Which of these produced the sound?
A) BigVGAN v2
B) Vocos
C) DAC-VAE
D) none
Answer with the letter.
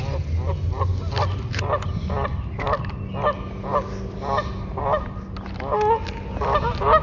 D